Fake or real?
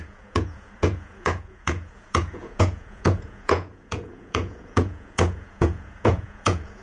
fake